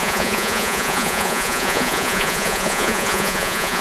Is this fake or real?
fake